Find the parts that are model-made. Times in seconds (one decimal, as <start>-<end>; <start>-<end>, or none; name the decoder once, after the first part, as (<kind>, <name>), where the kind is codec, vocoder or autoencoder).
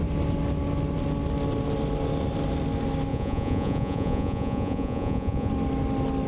3.1-5.5 (vocoder, Vocos)